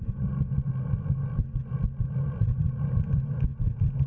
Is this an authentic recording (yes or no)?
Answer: yes